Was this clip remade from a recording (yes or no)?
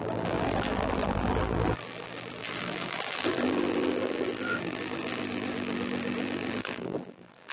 yes